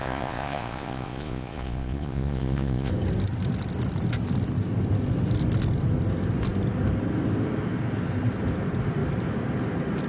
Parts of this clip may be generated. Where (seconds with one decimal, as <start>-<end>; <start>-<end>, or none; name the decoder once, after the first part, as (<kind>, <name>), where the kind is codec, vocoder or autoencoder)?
0.0-2.9 (vocoder, Vocos)